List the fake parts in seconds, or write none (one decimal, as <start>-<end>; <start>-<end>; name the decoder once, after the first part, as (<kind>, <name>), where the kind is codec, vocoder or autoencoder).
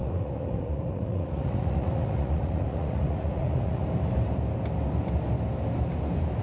0.0-3.8 (vocoder, Vocos)